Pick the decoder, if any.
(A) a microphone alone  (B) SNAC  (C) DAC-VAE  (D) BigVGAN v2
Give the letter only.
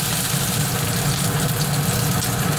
A